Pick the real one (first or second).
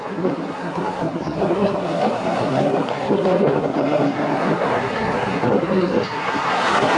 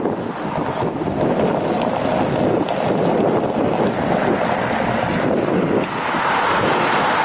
second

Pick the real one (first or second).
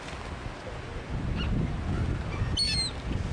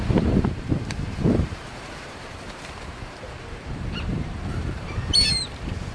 first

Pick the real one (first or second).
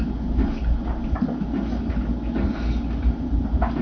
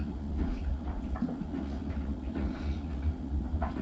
first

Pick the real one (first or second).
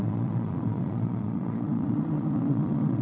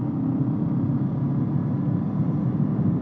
second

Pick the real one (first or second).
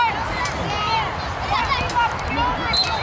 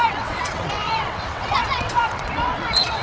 first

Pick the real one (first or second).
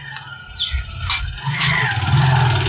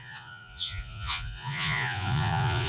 first